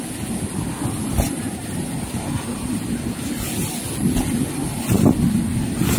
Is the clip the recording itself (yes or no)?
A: yes